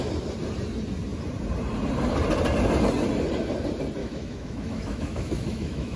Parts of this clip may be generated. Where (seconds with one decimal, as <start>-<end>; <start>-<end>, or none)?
4.0-6.0